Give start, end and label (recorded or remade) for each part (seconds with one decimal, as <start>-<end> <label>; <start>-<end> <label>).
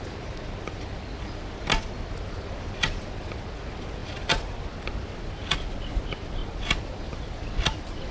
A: 0.0-8.1 recorded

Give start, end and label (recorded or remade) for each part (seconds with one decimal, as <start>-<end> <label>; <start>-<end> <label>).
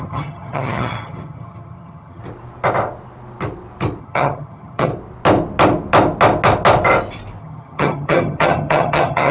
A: 0.0-2.2 remade; 2.2-4.0 recorded; 4.0-4.9 remade; 4.9-7.4 recorded; 7.4-9.3 remade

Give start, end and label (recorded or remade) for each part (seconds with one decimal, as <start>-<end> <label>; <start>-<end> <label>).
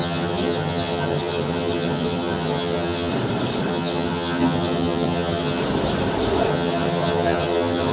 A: 0.0-3.1 remade; 3.1-3.7 recorded; 3.7-5.6 remade; 5.6-6.5 recorded; 6.5-7.9 remade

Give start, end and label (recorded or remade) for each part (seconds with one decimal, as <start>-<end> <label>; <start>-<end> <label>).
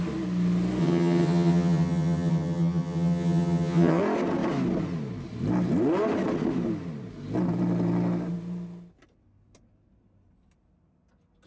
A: 0.0-0.8 recorded; 0.8-4.0 remade; 4.0-11.5 recorded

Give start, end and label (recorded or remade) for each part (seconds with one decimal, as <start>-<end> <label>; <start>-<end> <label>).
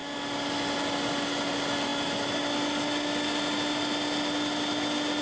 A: 0.0-5.2 recorded